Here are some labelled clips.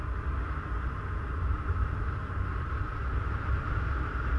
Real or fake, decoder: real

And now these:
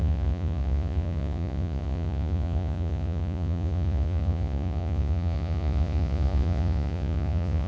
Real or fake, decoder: fake, vocoder, Vocos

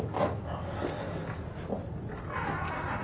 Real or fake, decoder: real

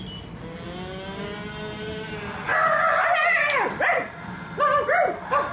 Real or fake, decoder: real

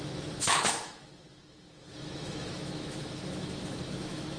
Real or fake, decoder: fake, autoencoder, DAC-VAE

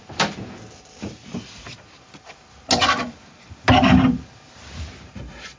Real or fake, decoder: real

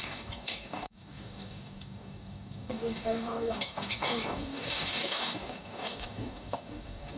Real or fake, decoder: fake, codec, DAC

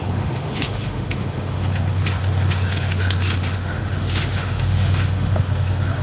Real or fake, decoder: fake, autoencoder, DAC-VAE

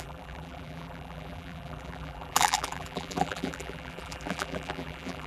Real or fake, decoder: fake, vocoder, BigVGAN v2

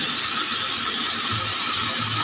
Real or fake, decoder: real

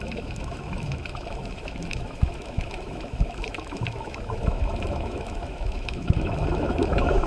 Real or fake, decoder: fake, autoencoder, DAC-VAE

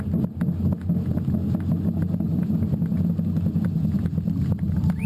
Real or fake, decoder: real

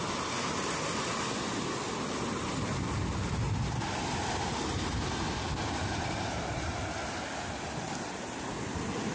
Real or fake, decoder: real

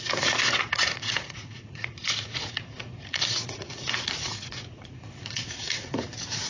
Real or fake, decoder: fake, vocoder, Vocos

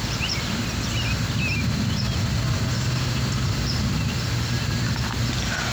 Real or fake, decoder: real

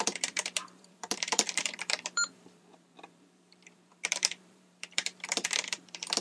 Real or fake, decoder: fake, vocoder, BigVGAN v2